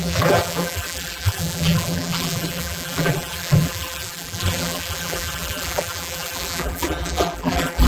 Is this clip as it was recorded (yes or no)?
no